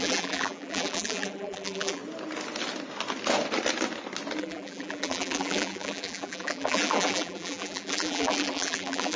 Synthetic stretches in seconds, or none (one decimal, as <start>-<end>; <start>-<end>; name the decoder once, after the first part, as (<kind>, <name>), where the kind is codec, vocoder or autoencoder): 0.0-2.0 (vocoder, BigVGAN v2); 4.4-9.2